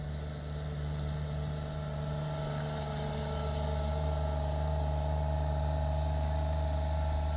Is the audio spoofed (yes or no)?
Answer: no